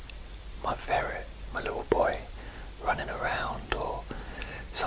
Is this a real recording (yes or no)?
no